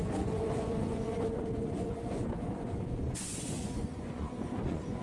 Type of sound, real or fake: fake